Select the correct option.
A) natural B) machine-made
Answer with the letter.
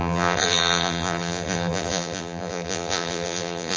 B